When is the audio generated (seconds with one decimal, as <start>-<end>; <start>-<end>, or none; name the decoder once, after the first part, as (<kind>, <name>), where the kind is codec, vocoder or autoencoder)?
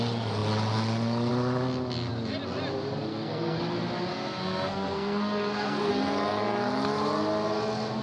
3.1-3.6 (codec, SNAC); 4.1-5.9